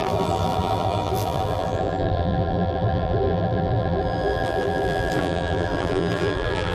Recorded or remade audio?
remade